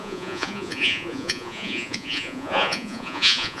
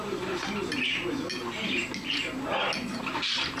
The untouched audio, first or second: second